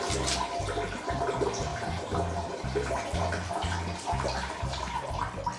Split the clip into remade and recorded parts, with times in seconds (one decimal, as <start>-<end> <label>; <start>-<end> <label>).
0.0-1.7 recorded; 1.7-5.1 remade; 5.1-5.6 recorded